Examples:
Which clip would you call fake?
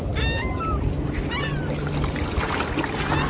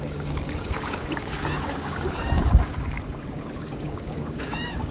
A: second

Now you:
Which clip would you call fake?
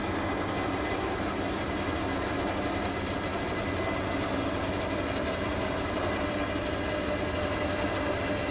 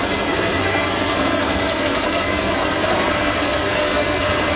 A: second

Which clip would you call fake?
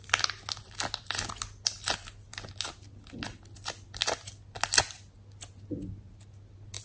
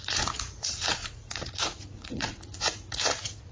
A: second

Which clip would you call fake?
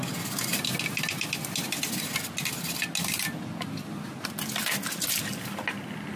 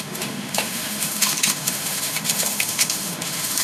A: second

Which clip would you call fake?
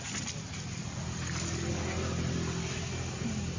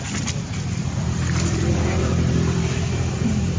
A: second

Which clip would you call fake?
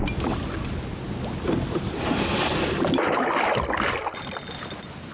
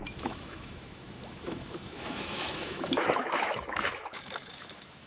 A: second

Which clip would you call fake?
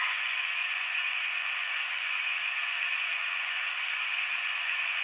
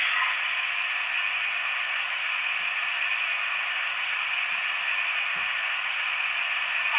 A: first